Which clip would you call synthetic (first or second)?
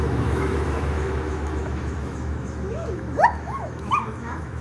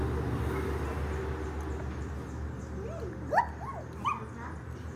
first